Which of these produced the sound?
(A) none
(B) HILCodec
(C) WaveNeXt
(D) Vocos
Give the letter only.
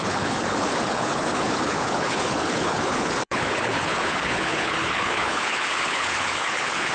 B